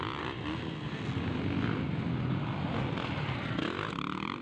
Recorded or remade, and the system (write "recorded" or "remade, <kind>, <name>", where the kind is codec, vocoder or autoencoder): recorded